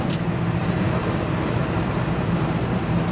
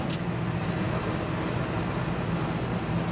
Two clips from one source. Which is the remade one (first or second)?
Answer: first